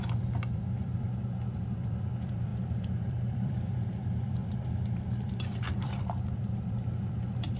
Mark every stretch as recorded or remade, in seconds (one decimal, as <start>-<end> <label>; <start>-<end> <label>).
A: 0.0-7.6 remade